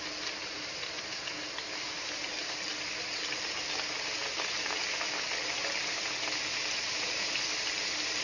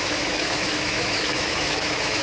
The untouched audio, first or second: first